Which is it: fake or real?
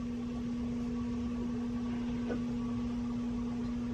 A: real